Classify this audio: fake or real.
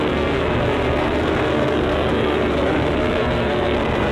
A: fake